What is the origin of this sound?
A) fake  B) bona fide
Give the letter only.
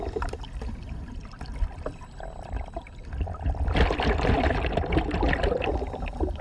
A